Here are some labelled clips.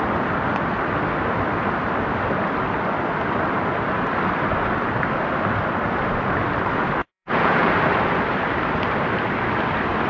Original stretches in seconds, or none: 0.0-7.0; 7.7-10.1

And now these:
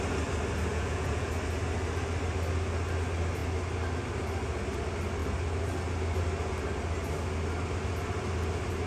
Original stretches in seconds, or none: 0.0-0.7; 1.3-8.9

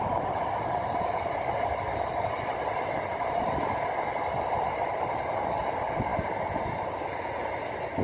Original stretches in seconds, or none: 0.0-8.0